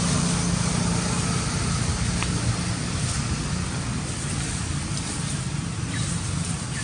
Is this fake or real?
real